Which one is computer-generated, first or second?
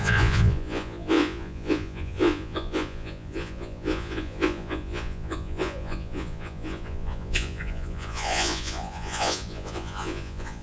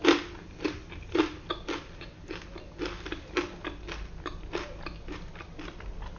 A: first